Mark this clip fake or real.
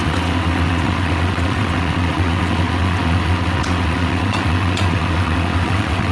fake